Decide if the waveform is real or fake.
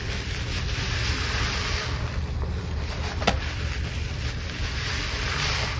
real